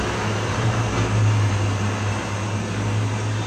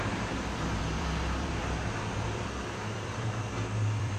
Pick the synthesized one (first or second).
second